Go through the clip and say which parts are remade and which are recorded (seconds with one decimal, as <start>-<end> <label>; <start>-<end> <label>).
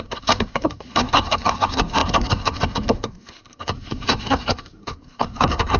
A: 0.0-5.8 remade